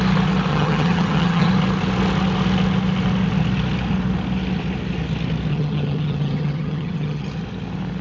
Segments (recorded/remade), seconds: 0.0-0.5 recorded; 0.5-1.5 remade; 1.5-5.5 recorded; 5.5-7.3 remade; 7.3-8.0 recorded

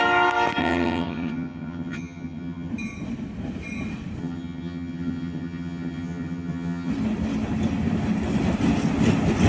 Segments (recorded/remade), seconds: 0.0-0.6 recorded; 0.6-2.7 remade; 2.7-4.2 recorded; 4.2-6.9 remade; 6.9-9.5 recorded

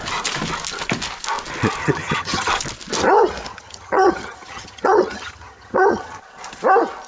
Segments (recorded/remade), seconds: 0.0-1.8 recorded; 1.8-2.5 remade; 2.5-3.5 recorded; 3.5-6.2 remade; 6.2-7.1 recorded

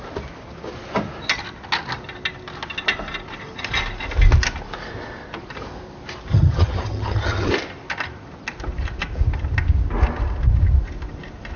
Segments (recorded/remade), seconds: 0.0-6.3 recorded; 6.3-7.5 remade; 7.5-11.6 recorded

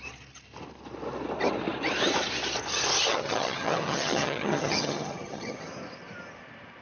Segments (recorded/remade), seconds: 0.0-3.1 recorded; 3.1-5.6 remade; 5.6-6.8 recorded

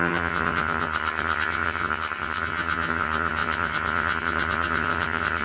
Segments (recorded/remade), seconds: 0.0-5.4 remade